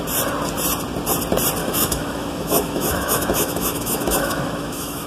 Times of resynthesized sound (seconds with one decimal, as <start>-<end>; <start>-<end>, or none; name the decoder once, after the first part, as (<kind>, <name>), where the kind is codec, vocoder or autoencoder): 1.6-5.1 (autoencoder, DAC-VAE)